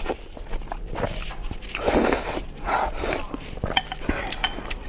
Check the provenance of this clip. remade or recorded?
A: recorded